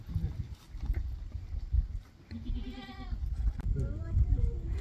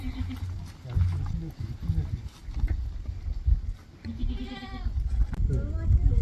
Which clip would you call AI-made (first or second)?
first